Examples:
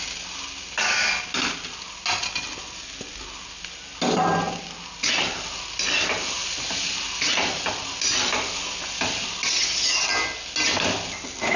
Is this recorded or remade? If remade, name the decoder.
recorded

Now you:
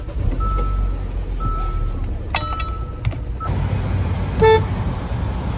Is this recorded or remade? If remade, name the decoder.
recorded